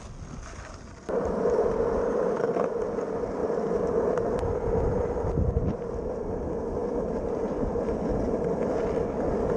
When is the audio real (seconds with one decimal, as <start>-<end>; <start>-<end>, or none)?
0.0-9.6